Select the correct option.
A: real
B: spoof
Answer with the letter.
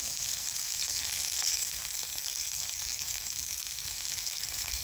B